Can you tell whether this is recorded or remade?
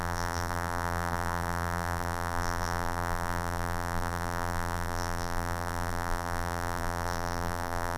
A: remade